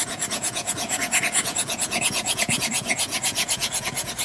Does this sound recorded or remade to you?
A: remade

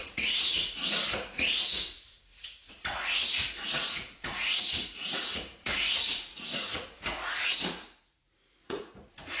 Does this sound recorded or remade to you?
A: remade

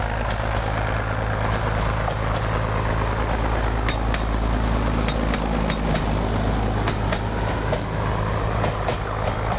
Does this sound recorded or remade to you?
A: recorded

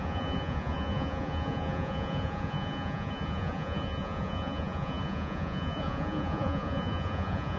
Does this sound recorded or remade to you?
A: remade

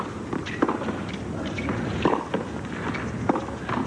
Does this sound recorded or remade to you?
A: recorded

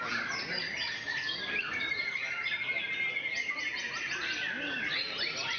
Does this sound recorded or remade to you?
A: recorded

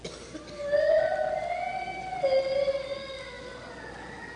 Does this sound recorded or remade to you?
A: recorded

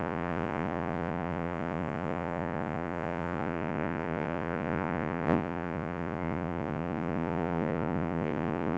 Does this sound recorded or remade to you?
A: remade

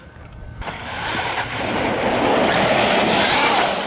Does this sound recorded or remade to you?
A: recorded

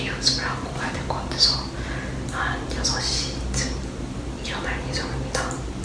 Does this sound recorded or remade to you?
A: recorded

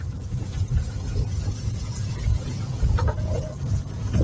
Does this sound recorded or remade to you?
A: remade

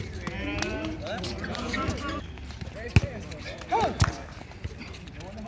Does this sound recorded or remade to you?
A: recorded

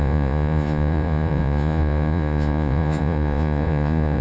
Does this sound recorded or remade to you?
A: remade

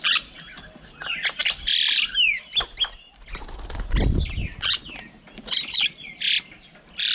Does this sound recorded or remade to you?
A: recorded